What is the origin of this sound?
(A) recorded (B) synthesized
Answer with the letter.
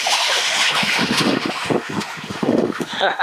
B